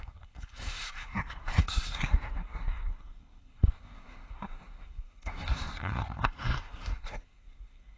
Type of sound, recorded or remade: remade